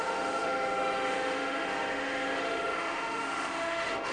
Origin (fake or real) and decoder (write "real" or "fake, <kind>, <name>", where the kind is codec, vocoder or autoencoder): fake, autoencoder, DAC-VAE